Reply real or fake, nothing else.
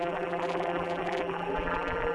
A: fake